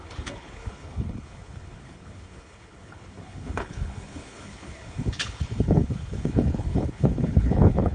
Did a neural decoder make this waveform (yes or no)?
yes